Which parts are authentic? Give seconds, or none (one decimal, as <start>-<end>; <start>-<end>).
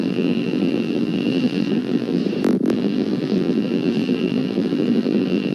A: 2.2-2.7